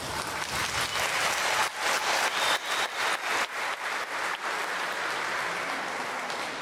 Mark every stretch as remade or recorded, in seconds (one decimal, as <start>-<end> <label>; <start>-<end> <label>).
0.0-6.6 recorded